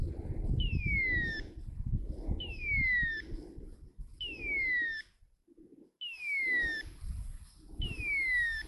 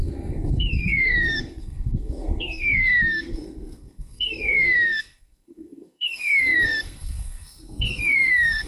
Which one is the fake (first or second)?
second